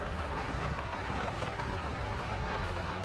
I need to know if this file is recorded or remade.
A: remade